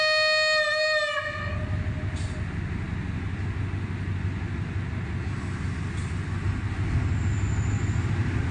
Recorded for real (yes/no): yes